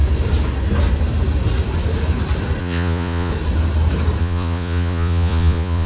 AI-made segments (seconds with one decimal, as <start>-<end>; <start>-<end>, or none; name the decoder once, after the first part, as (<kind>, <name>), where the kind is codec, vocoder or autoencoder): 2.6-3.3 (vocoder, Vocos); 4.2-5.9